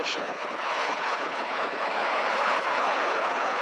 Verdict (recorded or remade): remade